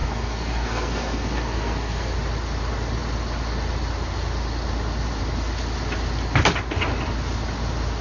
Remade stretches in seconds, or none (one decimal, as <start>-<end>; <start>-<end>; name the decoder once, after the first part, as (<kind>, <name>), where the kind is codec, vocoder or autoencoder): 0.0-2.1 (codec, SNAC)